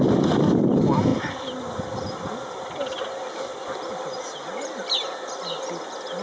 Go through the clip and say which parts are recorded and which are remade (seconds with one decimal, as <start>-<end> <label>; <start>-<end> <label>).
0.0-6.2 recorded